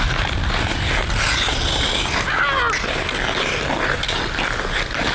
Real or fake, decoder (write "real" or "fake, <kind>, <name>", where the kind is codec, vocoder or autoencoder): real